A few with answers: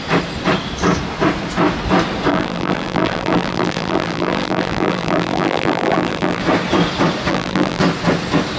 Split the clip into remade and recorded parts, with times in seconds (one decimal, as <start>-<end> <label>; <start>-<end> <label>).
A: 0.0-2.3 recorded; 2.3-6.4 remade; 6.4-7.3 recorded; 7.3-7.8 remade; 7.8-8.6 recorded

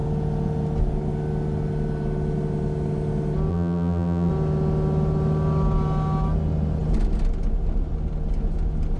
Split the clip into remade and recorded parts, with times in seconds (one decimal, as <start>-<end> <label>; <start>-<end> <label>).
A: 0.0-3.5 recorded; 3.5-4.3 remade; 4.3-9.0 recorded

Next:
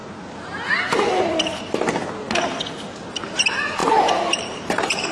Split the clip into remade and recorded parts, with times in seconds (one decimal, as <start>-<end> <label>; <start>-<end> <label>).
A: 0.0-3.1 recorded; 3.1-5.1 remade

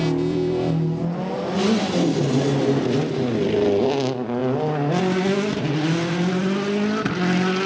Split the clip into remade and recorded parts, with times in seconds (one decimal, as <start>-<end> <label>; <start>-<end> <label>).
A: 0.0-7.7 recorded

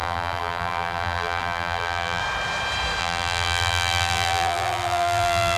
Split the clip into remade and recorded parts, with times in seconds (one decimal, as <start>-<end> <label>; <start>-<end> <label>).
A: 0.0-2.2 remade; 2.2-3.0 recorded; 3.0-5.6 remade

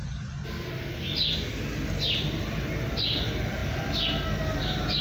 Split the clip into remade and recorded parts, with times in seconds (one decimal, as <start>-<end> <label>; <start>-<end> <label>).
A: 0.0-5.0 recorded